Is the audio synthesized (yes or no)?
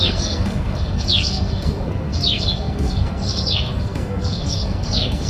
yes